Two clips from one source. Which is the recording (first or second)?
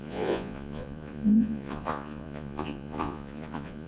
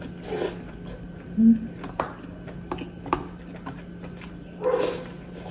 second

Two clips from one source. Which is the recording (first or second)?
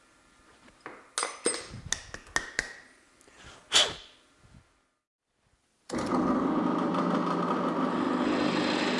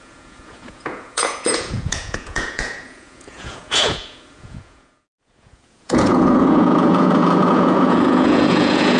first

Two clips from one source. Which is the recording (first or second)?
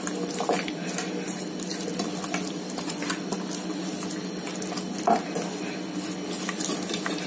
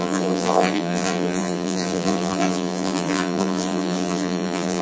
first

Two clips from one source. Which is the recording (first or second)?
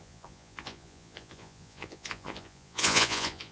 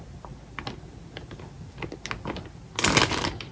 second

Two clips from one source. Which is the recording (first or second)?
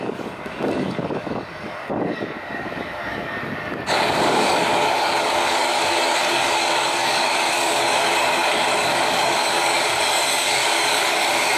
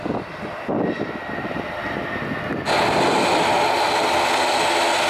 second